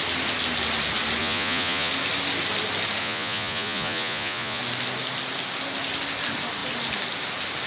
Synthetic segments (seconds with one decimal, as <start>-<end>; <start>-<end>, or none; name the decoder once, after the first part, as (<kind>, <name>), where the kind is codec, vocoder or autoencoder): 1.2-1.9 (vocoder, Vocos); 3.0-4.6